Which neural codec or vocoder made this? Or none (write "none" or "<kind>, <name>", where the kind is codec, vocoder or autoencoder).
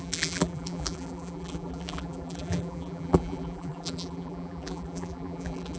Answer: vocoder, BigVGAN v2